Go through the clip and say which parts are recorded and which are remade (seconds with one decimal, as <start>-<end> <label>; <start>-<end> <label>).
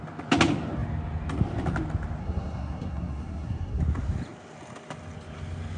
0.0-2.2 recorded; 2.2-3.8 remade; 3.8-5.8 recorded